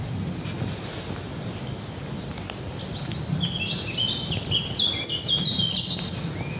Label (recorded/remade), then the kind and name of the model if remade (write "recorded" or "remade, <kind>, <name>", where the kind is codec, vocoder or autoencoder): recorded